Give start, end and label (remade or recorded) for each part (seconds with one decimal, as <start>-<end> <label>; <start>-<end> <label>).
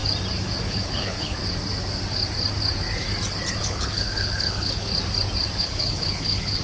0.0-0.6 recorded; 0.6-1.4 remade; 1.4-3.6 recorded; 3.6-4.9 remade; 4.9-5.6 recorded; 5.6-6.6 remade